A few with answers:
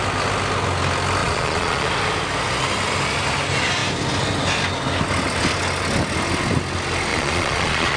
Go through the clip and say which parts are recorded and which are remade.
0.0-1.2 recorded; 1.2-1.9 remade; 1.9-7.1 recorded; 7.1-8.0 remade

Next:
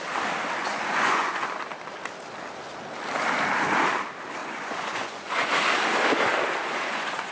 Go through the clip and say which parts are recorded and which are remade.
0.0-0.6 recorded; 0.6-1.5 remade; 1.5-4.4 recorded; 4.4-5.5 remade; 5.5-6.6 recorded; 6.6-7.3 remade